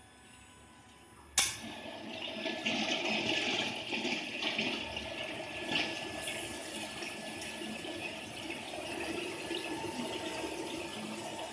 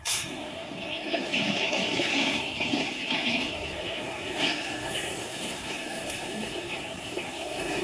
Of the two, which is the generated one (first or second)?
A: second